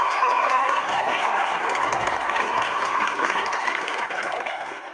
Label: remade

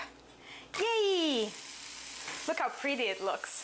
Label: recorded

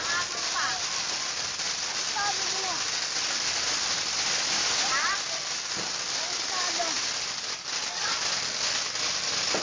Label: recorded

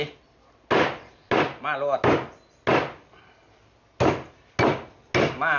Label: recorded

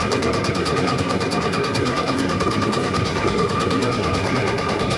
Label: remade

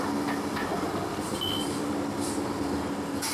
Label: recorded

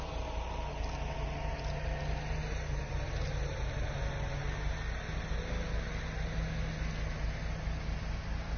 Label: recorded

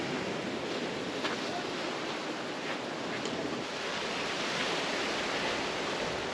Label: recorded